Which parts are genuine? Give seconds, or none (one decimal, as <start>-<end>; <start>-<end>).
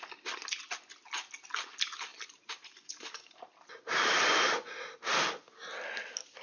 0.0-2.1; 4.7-6.4